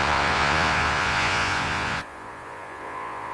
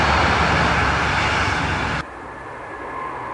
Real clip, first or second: second